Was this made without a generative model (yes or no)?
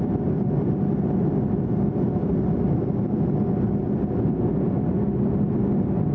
yes